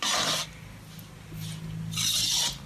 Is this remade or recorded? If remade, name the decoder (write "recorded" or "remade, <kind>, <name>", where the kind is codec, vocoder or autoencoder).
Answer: recorded